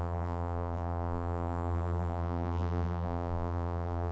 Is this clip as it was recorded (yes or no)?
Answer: no